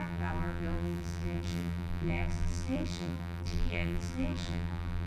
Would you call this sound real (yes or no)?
no